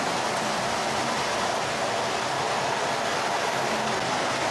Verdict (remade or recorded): recorded